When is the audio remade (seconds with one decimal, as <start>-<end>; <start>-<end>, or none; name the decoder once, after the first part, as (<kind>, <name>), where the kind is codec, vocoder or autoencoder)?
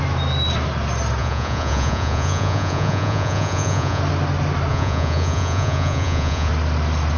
1.2-4.0 (vocoder, Vocos); 4.7-6.5